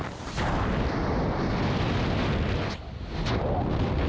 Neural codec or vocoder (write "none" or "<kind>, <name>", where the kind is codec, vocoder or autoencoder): none